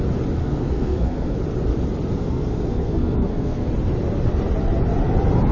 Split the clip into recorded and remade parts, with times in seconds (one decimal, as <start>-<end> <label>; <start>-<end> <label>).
0.0-0.4 recorded; 0.4-1.4 remade; 1.4-2.1 recorded; 2.1-3.7 remade; 3.7-5.5 recorded